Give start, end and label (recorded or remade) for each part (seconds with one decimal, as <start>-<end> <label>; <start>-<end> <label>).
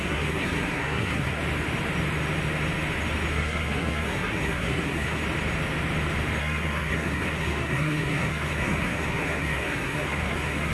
0.0-1.4 remade; 1.4-3.3 recorded; 3.3-5.2 remade; 5.2-6.4 recorded; 6.4-10.7 remade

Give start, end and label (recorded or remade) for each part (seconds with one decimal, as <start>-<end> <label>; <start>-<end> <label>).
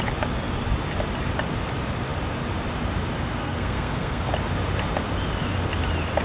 0.0-3.4 recorded; 3.4-4.3 remade; 4.3-6.2 recorded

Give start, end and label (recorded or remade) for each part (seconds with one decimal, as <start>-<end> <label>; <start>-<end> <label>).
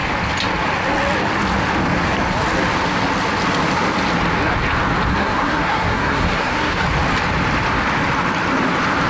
0.0-5.1 recorded; 5.1-6.8 remade; 6.8-9.1 recorded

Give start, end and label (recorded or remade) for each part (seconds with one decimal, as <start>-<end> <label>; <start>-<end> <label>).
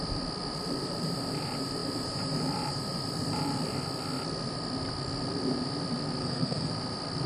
0.0-6.2 recorded; 6.2-6.7 remade; 6.7-7.3 recorded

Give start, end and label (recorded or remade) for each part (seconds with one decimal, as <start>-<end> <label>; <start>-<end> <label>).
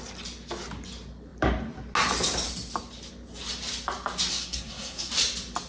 0.0-4.3 recorded; 4.3-5.1 remade; 5.1-5.7 recorded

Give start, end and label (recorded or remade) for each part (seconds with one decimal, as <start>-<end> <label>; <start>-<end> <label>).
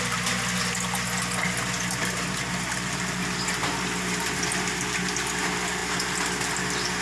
0.0-7.0 recorded